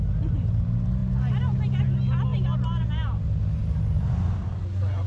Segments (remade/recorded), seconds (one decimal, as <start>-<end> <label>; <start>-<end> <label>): 0.0-5.1 recorded